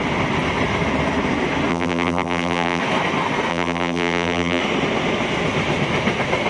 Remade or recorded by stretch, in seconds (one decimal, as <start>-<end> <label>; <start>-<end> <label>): 0.0-1.7 recorded; 1.7-2.8 remade; 2.8-3.5 recorded; 3.5-4.6 remade; 4.6-6.5 recorded